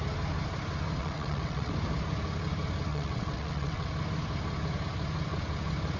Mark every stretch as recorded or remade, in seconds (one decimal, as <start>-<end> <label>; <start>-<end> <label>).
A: 0.0-1.0 recorded; 1.0-1.7 remade; 1.7-2.9 recorded; 2.9-3.9 remade; 3.9-6.0 recorded